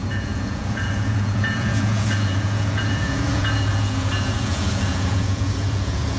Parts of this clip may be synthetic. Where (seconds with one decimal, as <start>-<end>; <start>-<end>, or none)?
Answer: 0.0-6.2